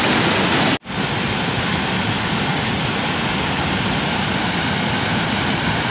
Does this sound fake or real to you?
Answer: real